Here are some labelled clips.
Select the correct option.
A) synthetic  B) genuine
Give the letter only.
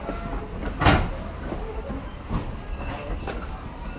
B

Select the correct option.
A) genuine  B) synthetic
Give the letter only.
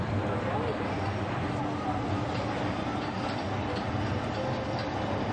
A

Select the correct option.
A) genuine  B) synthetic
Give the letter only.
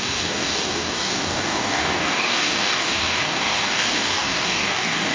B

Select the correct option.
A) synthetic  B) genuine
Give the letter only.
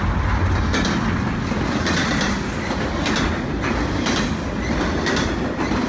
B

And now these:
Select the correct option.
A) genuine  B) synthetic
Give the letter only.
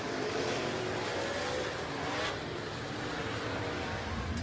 A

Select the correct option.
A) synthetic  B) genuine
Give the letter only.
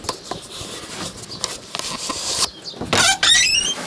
B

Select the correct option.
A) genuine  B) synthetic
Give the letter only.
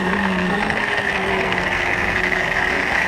B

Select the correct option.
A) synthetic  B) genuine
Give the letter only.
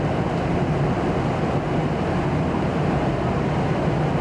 B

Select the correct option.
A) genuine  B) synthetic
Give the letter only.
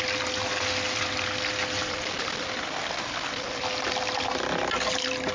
A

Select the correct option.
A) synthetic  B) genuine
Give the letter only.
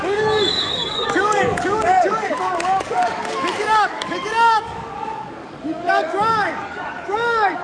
A